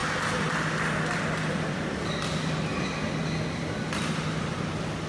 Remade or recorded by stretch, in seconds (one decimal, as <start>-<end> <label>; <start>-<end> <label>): 0.0-5.1 recorded